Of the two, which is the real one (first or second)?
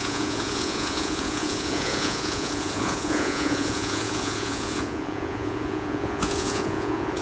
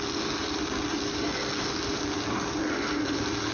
second